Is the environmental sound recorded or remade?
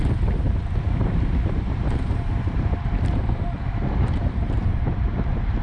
remade